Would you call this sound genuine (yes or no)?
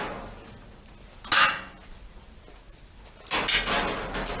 yes